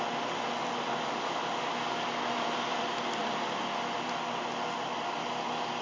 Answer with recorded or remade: recorded